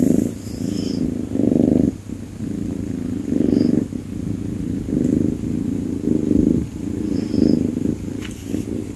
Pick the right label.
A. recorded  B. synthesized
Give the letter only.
A